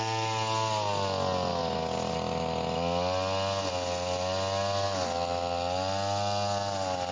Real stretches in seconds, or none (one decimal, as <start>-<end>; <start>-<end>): 0.0-7.1